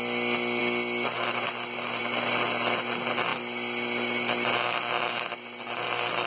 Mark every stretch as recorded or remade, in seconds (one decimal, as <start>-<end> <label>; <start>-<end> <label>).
0.0-6.3 recorded